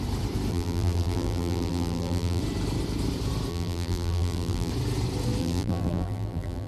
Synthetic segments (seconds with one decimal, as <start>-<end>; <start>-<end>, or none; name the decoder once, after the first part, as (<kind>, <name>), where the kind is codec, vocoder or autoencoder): 0.5-2.4 (vocoder, BigVGAN v2); 3.5-4.7; 5.4-6.7